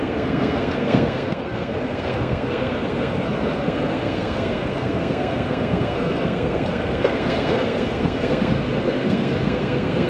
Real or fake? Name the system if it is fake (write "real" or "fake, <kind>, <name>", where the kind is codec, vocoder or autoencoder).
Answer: fake, codec, SNAC